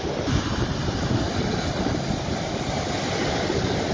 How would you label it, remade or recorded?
recorded